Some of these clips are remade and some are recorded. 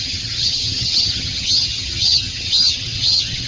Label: remade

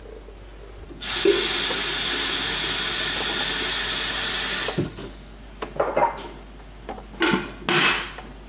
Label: recorded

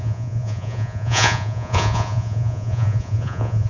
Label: remade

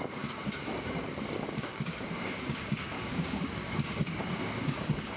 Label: remade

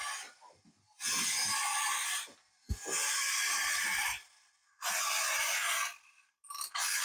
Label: recorded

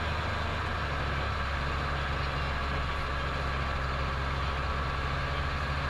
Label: recorded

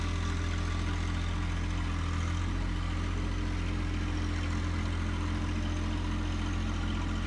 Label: recorded